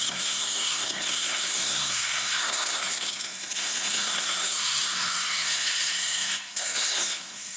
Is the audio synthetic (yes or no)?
yes